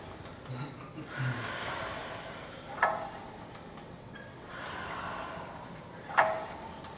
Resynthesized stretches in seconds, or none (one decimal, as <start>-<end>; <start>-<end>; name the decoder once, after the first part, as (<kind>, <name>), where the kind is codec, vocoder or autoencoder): 3.8-4.7 (vocoder, WaveNeXt)